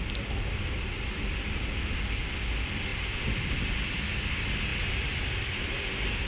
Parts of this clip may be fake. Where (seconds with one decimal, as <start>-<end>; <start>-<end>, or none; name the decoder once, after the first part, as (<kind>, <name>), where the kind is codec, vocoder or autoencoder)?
none